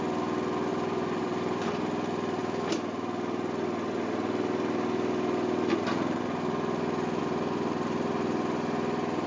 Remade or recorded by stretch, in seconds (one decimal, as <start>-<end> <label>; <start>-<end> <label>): 0.0-0.7 recorded; 0.7-1.7 remade; 1.7-9.3 recorded